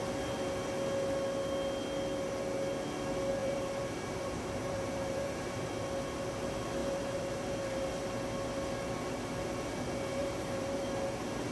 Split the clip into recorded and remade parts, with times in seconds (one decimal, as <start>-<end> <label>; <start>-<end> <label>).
0.0-3.4 recorded; 3.4-5.7 remade; 5.7-6.8 recorded; 6.8-7.9 remade; 7.9-10.2 recorded; 10.2-10.8 remade; 10.8-11.5 recorded